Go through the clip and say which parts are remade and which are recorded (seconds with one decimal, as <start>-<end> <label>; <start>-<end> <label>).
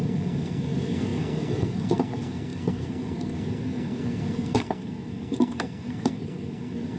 0.0-7.0 remade